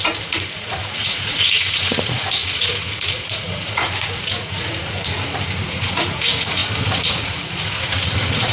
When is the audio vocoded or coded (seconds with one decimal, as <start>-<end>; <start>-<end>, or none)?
0.0-8.5